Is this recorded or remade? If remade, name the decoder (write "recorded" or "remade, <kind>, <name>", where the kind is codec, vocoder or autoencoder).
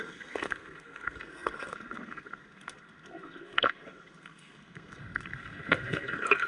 remade, codec, SNAC